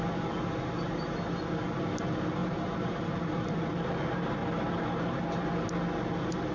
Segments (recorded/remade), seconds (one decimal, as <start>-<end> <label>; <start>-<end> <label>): 0.0-2.4 recorded; 2.4-3.6 remade; 3.6-4.4 recorded; 4.4-5.4 remade; 5.4-6.5 recorded